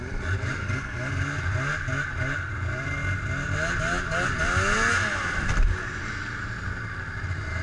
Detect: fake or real real